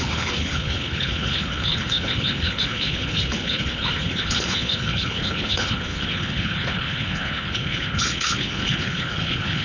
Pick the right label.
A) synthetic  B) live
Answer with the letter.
A